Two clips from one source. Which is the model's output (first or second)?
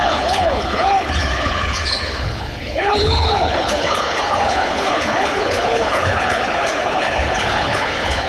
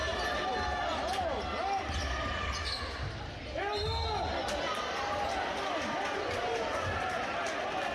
first